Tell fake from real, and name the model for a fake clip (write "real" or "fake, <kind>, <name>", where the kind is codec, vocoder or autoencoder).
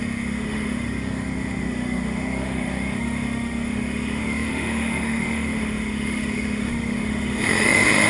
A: fake, autoencoder, DAC-VAE